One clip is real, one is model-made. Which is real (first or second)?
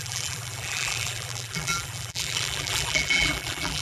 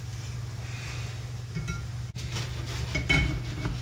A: second